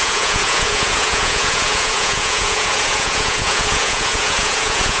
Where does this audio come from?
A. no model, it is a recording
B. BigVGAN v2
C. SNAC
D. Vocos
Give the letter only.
D